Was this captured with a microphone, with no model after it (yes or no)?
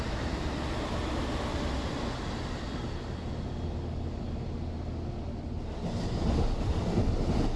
yes